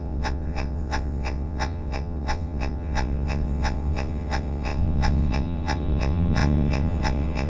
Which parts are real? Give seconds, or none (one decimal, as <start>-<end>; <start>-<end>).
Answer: none